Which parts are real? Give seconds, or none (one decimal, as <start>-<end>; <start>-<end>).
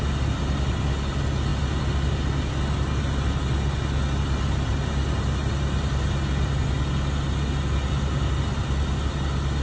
0.0-9.6